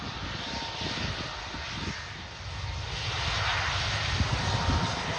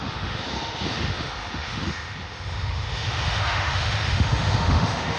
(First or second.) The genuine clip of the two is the first